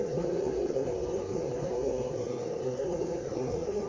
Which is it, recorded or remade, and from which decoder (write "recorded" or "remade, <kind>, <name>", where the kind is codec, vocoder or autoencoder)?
remade, codec, SNAC